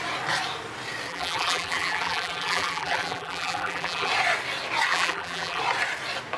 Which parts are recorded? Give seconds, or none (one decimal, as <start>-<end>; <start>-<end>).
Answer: 0.0-1.1; 4.1-4.9; 5.6-6.4